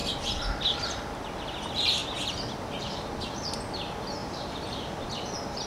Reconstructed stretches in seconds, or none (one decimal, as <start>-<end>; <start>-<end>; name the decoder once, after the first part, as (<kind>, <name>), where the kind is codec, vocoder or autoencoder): 4.2-5.1 (vocoder, BigVGAN v2)